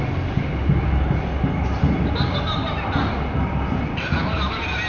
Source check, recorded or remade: recorded